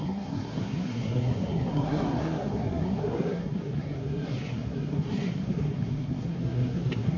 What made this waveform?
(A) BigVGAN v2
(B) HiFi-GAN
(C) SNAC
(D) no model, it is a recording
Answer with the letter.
C